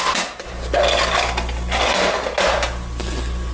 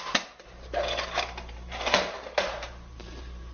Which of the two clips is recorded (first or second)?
first